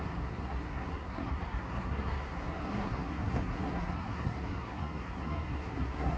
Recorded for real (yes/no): no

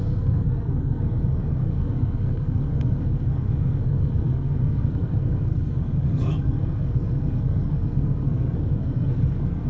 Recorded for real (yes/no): no